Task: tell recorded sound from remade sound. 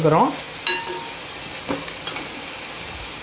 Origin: recorded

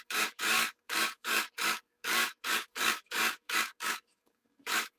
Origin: remade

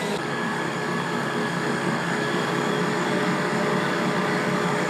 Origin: remade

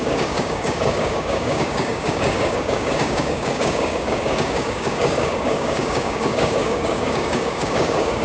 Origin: remade